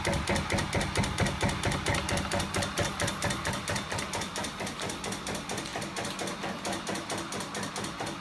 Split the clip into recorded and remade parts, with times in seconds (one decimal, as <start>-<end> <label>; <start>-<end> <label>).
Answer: 0.0-8.2 recorded